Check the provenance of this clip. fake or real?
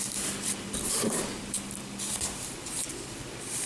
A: real